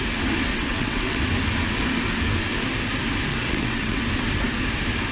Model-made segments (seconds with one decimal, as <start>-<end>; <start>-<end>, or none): 0.5-1.2; 3.3-4.0